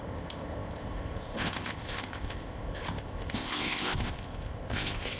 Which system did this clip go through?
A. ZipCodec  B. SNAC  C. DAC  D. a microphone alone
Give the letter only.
A